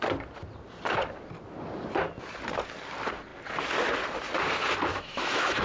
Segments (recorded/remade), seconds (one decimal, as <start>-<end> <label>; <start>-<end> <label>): 0.0-4.9 recorded; 4.9-5.6 remade

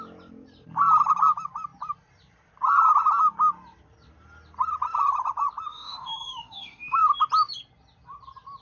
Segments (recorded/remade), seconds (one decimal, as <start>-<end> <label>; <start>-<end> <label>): 0.0-5.7 recorded; 5.7-7.0 remade; 7.0-8.6 recorded

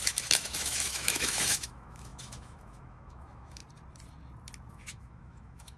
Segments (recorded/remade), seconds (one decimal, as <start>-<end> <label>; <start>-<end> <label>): 0.0-3.6 remade; 3.6-4.7 recorded; 4.7-5.8 remade

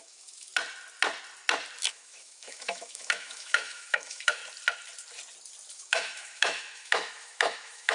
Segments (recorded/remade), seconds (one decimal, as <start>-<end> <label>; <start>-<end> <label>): 0.0-0.5 remade; 0.5-1.9 recorded; 1.9-4.4 remade; 4.4-5.7 recorded; 5.7-7.9 remade

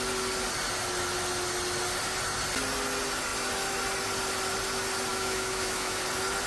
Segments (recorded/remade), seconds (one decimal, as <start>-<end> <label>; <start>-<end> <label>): 0.0-5.1 recorded; 5.1-6.0 remade; 6.0-6.5 recorded

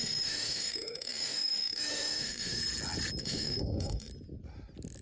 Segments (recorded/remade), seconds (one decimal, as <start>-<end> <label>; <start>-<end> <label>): 0.0-2.6 remade; 2.6-3.2 recorded; 3.2-4.1 remade; 4.1-5.0 recorded

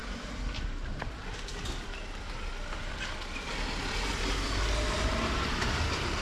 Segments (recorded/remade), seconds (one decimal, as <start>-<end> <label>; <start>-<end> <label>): 0.0-6.2 recorded